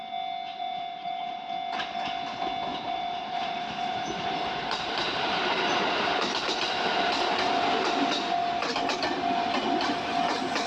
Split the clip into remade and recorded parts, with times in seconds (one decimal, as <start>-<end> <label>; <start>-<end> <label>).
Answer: 0.0-0.5 recorded; 0.5-1.4 remade; 1.4-2.7 recorded; 2.7-7.5 remade; 7.5-10.7 recorded